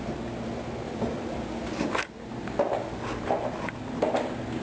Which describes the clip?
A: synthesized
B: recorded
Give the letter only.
B